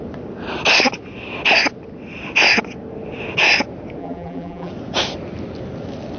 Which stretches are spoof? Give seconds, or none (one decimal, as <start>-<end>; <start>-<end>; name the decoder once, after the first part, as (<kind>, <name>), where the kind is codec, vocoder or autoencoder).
4.0-4.7 (vocoder, BigVGAN v2)